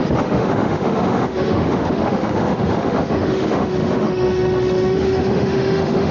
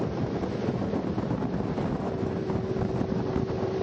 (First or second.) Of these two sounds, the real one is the second